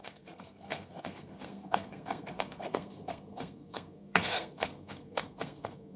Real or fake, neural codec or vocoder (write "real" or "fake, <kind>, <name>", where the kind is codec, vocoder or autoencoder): fake, codec, SNAC